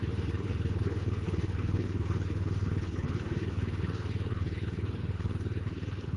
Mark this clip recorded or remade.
remade